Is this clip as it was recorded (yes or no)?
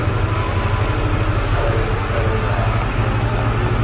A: yes